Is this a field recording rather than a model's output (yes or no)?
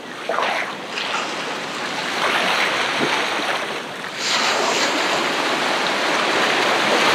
yes